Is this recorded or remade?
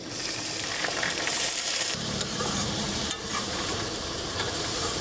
remade